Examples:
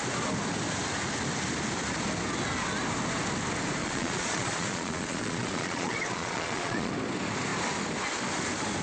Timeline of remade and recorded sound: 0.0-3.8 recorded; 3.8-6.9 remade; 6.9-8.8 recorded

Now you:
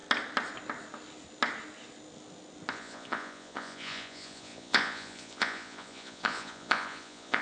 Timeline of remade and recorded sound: 0.0-2.7 recorded; 2.7-7.4 remade

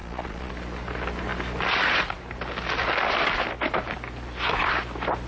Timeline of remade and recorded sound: 0.0-0.5 remade; 0.5-5.3 recorded

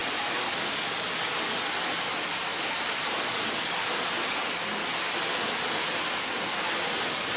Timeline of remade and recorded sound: 0.0-7.4 recorded

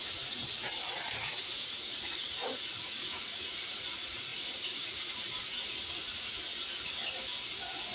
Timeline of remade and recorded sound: 0.0-0.4 remade; 0.4-1.5 recorded; 1.5-6.5 remade; 6.5-7.9 recorded

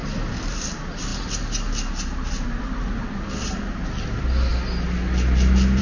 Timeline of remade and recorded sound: 0.0-5.8 recorded